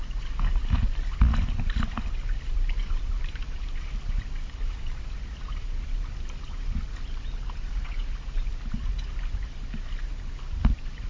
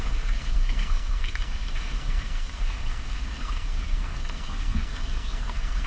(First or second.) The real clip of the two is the first